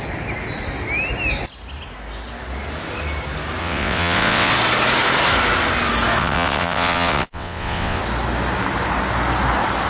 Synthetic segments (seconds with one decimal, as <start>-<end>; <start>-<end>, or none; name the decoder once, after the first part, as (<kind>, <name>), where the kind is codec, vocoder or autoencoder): 3.6-4.5 (vocoder, WaveNeXt); 6.2-8.0